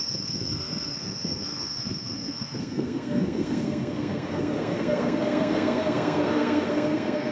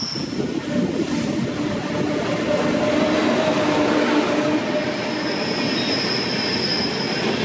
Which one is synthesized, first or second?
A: first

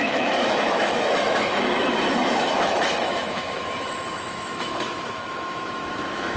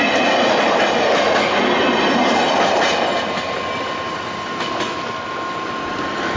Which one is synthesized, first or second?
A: first